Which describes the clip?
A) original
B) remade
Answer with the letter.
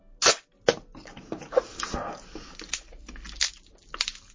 A